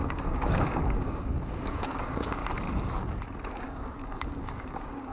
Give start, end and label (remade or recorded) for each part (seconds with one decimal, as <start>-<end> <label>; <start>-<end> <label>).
0.0-2.4 remade; 2.4-3.5 recorded; 3.5-5.1 remade